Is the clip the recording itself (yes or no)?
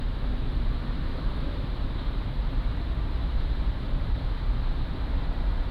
no